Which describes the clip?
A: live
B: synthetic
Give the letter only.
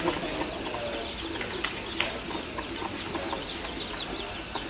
A